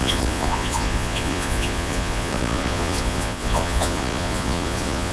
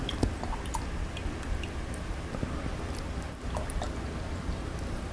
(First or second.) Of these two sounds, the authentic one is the second